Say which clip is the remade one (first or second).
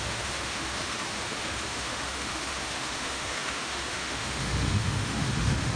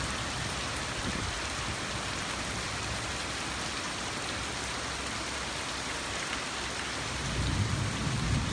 first